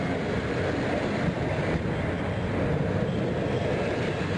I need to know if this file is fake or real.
real